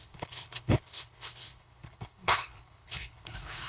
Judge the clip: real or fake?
fake